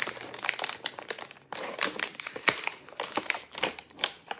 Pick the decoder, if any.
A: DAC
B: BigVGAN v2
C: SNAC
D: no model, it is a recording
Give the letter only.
B